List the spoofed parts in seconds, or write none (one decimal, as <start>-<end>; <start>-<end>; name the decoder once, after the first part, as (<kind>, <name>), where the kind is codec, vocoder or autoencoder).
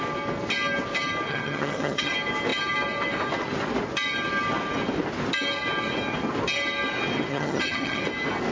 1.3-2.1 (vocoder, HiFi-GAN); 7.3-8.0